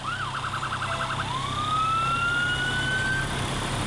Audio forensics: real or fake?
real